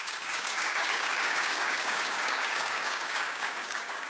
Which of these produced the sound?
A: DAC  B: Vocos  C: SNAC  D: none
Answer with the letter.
A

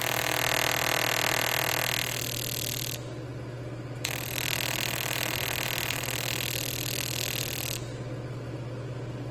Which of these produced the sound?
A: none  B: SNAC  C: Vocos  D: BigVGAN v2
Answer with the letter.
A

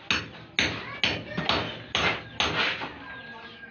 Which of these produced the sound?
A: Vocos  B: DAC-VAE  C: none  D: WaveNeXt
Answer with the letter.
C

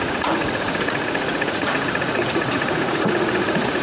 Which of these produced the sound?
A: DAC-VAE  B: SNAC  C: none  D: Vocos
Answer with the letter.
D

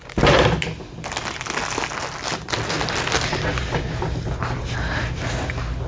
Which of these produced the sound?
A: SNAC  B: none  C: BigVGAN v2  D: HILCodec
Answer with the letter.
B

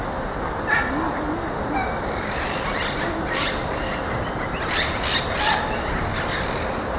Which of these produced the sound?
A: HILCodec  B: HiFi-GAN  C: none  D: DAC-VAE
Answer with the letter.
C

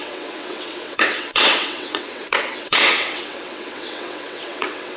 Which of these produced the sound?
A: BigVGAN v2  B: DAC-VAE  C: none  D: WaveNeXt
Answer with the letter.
D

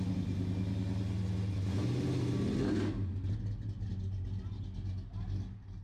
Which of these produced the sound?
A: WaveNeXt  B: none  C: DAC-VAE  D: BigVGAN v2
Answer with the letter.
B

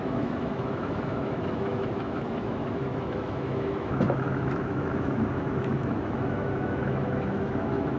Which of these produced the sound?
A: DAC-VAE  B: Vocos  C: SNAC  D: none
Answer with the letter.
A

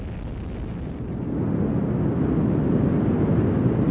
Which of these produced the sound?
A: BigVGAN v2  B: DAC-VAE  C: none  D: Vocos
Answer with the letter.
C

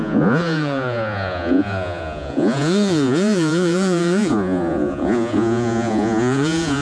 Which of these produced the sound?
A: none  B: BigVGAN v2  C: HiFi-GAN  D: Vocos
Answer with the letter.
D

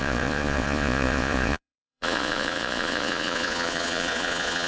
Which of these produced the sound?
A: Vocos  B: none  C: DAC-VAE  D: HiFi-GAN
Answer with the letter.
A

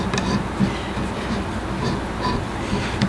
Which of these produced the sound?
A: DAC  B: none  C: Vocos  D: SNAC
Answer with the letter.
B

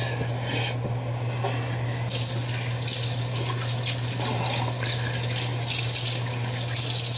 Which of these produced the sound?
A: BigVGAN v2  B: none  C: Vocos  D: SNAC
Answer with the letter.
B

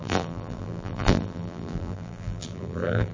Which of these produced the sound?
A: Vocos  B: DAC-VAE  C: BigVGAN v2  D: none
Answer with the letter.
C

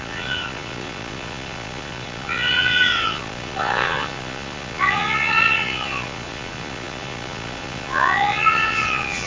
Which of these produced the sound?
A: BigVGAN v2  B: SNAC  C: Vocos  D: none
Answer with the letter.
C